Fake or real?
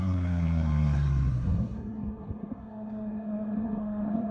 fake